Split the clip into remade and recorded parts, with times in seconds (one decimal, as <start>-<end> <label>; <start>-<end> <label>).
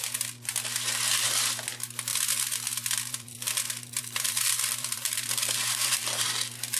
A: 0.0-2.1 recorded; 2.1-6.2 remade; 6.2-6.8 recorded